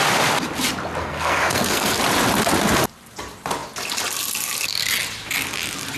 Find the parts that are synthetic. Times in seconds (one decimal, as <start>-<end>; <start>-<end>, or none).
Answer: 1.0-2.0